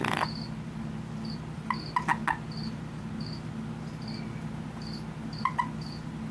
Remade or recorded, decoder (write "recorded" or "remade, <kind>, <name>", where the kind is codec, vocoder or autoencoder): recorded